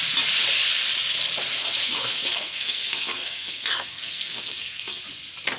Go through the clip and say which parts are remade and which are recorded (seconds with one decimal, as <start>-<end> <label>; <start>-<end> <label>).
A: 0.0-1.6 recorded; 1.6-5.0 remade; 5.0-5.6 recorded